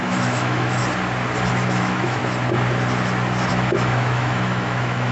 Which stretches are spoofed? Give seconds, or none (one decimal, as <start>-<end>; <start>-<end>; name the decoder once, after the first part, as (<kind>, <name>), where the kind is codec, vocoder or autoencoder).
0.0-0.8 (autoencoder, DAC-VAE); 1.5-2.2; 3.5-5.1